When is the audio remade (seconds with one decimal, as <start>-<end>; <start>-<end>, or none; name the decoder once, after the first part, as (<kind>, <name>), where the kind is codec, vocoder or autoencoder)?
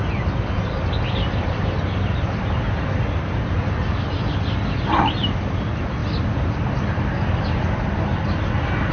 none